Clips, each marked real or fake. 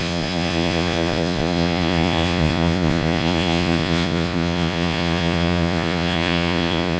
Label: fake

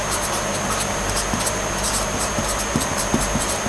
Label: fake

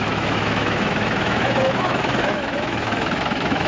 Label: fake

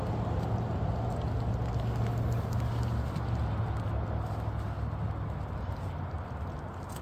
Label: real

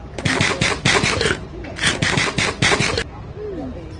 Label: real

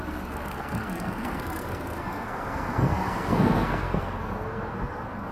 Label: fake